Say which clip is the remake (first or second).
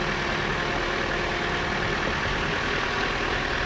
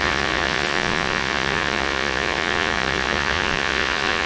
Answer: second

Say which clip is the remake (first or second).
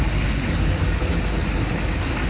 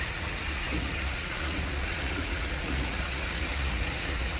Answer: second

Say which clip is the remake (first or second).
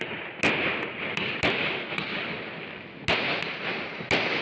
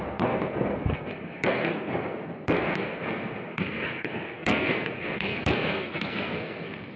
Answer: second